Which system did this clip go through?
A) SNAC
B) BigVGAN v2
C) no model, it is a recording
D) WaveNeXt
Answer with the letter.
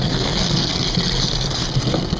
A